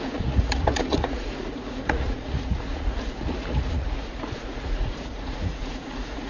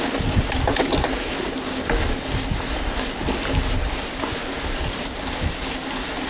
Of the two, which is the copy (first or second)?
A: first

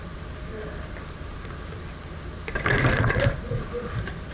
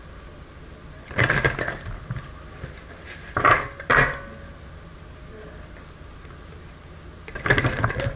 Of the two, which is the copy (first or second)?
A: first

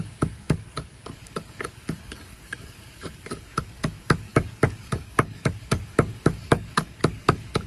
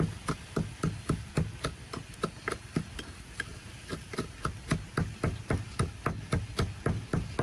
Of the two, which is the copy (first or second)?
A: first